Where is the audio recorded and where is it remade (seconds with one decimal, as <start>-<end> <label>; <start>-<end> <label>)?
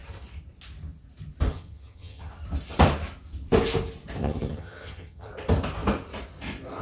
0.0-1.5 recorded; 1.5-2.3 remade; 2.3-4.2 recorded; 4.2-5.3 remade; 5.3-6.8 recorded